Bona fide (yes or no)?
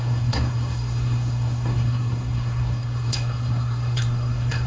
no